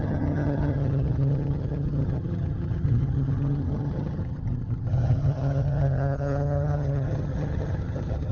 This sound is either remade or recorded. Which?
remade